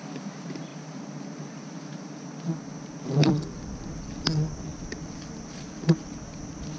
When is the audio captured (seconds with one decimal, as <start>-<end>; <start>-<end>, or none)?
0.0-3.2; 3.8-4.7; 5.4-6.8